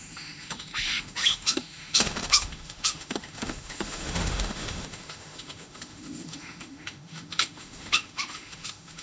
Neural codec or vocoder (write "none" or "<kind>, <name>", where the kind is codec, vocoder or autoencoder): autoencoder, DAC-VAE